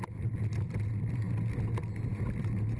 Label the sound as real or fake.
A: real